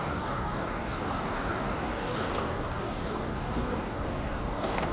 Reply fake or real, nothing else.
fake